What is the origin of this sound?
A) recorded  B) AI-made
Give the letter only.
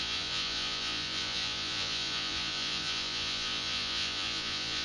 B